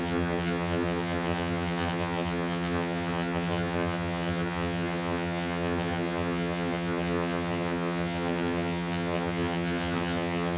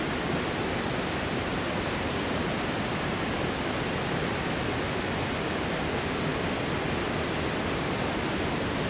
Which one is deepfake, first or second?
first